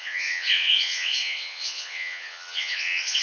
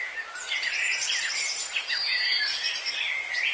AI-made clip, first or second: first